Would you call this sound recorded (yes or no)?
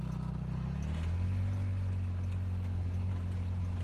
yes